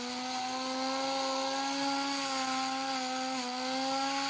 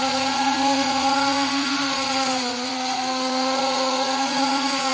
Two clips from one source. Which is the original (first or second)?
first